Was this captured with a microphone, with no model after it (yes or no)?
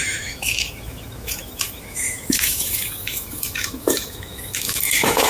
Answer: no